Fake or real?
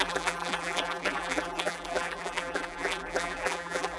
fake